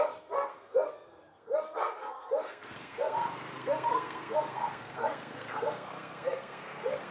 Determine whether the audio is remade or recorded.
remade